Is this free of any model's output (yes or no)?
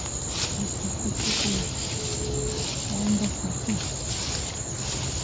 yes